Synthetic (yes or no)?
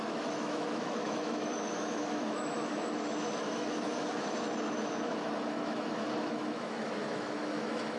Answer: yes